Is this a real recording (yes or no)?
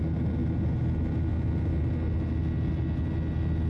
yes